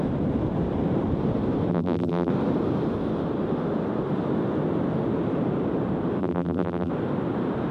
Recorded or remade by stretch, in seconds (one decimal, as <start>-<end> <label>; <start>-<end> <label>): 0.0-1.7 recorded; 1.7-2.3 remade; 2.3-6.2 recorded; 6.2-6.9 remade; 6.9-7.7 recorded